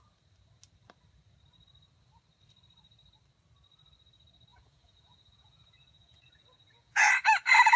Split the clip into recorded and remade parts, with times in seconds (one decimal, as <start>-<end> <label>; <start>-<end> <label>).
0.0-4.5 recorded; 4.5-7.1 remade; 7.1-7.8 recorded